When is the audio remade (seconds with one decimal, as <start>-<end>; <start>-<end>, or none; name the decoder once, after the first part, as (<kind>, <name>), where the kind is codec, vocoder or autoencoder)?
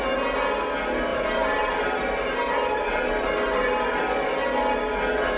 1.1-4.3 (vocoder, BigVGAN v2)